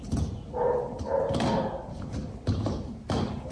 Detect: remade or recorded recorded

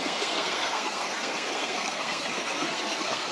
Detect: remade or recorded remade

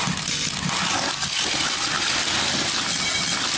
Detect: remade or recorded recorded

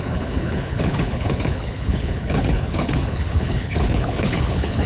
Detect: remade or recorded remade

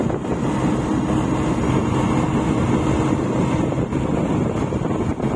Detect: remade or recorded recorded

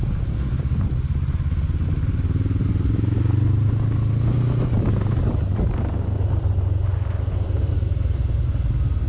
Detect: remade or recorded recorded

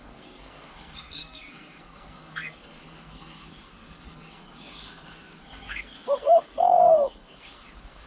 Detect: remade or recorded remade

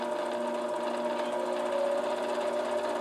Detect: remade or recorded recorded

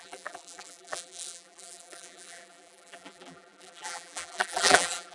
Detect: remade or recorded remade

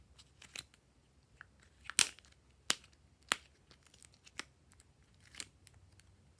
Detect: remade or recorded recorded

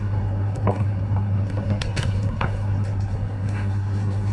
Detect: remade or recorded remade